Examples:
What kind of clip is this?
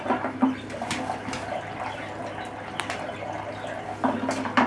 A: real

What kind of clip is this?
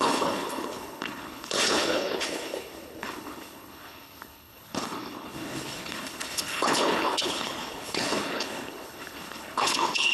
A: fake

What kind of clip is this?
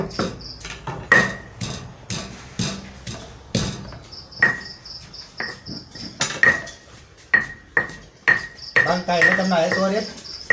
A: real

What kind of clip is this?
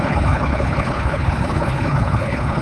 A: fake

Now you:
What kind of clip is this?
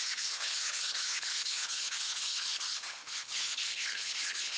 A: fake